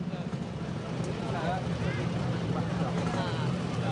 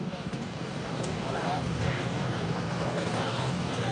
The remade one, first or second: second